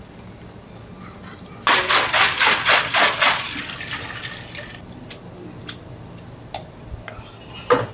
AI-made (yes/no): no